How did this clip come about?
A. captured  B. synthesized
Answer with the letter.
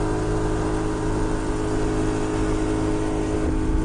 A